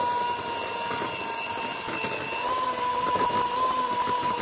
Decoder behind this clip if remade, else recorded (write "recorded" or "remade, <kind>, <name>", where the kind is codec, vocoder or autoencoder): recorded